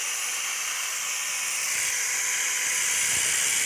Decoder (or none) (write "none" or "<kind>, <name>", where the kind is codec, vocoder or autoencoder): none